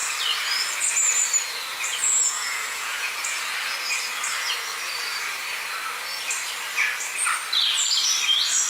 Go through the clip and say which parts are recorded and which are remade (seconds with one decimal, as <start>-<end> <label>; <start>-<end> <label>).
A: 0.0-2.0 recorded; 2.0-3.1 remade; 3.1-8.7 recorded